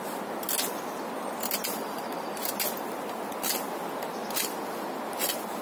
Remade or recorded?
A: recorded